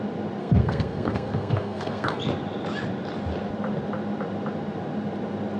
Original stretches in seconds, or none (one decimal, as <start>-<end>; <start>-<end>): 0.0-0.4; 2.2-5.6